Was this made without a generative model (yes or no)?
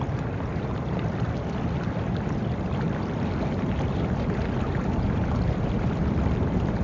yes